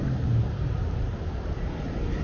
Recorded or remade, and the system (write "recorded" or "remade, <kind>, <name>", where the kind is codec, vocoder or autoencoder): recorded